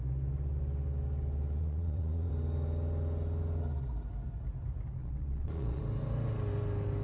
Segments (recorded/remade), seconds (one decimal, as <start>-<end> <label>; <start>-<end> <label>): 0.0-1.6 recorded; 1.6-2.3 remade; 2.3-5.0 recorded; 5.0-5.8 remade; 5.8-7.0 recorded